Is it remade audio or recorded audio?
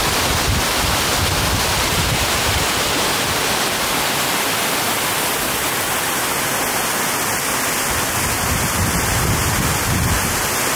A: recorded